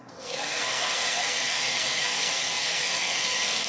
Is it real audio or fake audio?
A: fake